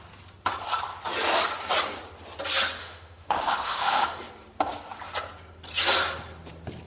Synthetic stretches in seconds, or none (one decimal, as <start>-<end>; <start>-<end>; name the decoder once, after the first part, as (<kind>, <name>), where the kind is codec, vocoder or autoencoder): 2.8-4.2 (autoencoder, DAC-VAE)